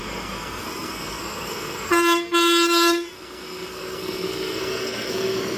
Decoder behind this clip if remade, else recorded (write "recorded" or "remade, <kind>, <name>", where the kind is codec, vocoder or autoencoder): remade, codec, SNAC